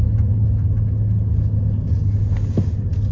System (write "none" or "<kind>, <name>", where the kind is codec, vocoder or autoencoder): none